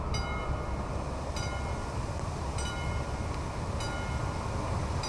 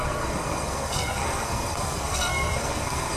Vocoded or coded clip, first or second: second